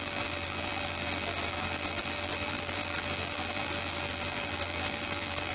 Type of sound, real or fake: fake